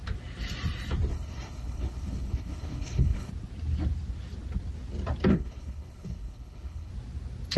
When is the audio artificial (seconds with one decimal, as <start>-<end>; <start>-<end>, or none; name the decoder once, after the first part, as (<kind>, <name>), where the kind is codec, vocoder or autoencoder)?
1.1-3.3 (codec, HILCodec); 5.3-6.9